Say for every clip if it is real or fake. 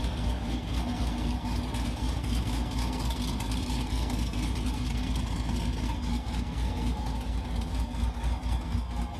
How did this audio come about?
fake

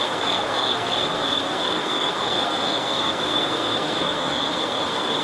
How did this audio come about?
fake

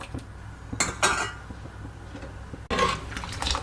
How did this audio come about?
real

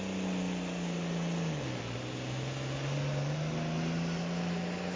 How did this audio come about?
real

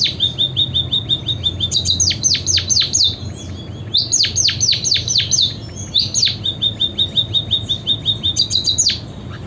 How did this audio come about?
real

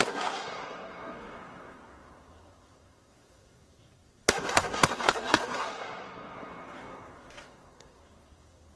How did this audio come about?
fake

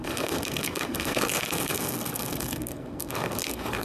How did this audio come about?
fake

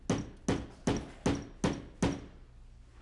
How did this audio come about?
real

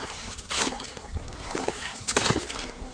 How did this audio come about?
fake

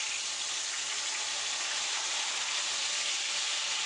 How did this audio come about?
real